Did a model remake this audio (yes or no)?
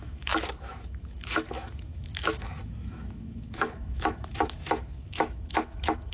yes